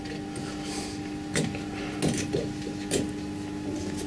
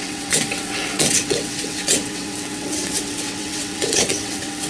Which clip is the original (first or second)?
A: first